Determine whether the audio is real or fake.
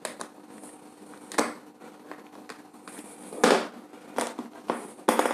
real